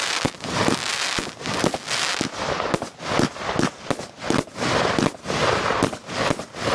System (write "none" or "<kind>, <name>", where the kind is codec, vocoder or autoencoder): none